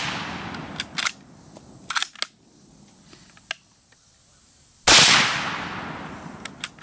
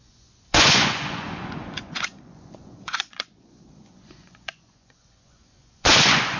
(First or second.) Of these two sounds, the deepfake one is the second